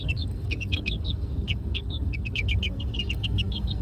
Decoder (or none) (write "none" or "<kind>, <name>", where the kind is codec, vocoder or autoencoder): codec, SNAC